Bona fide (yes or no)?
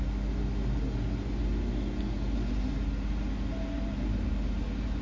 yes